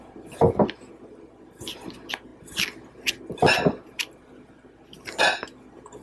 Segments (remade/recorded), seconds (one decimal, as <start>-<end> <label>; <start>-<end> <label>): 0.0-6.0 recorded